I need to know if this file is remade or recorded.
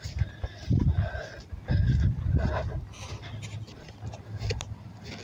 recorded